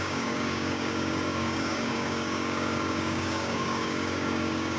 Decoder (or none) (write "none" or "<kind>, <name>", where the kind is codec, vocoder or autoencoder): codec, DAC